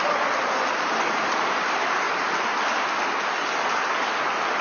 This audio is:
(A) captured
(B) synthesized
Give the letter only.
A